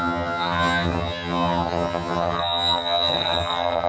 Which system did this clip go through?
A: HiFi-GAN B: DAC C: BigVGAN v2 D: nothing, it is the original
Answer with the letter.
A